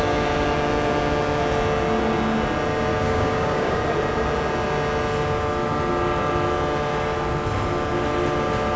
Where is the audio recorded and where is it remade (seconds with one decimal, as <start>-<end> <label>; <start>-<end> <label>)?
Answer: 0.0-2.9 recorded; 2.9-3.8 remade; 3.8-8.8 recorded